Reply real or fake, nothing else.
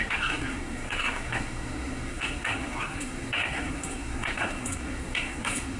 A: fake